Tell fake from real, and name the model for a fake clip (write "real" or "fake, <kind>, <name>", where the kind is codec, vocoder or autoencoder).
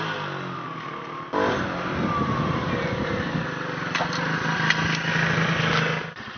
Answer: real